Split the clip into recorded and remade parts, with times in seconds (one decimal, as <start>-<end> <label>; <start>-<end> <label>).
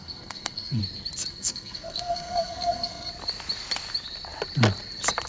0.0-0.8 remade; 0.8-1.3 recorded; 1.3-3.1 remade; 3.1-5.3 recorded